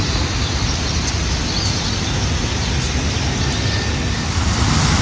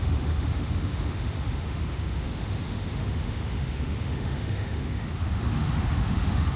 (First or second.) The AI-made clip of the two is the second